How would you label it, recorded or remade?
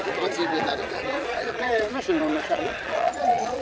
remade